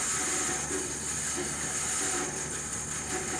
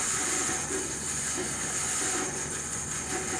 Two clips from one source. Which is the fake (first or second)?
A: second